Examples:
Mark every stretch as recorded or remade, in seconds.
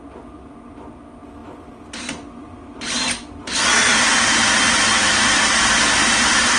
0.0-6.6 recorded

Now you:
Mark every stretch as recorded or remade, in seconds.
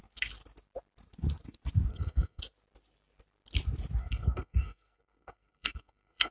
0.0-1.9 recorded; 1.9-2.4 remade; 2.4-4.0 recorded; 4.0-6.3 remade